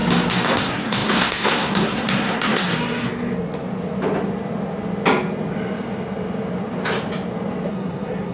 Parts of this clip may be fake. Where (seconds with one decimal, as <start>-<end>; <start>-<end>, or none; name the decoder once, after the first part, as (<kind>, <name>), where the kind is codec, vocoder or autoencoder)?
0.5-2.7 (codec, SNAC); 7.7-8.3